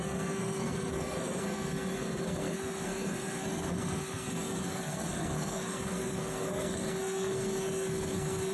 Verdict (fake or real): fake